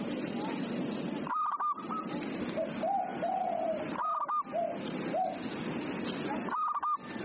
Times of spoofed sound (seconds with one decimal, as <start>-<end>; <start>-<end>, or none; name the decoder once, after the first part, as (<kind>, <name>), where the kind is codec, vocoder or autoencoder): none